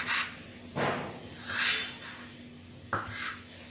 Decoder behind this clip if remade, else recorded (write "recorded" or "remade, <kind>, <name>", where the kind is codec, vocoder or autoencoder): recorded